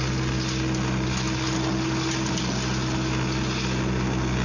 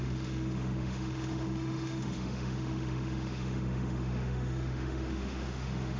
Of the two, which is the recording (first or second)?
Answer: first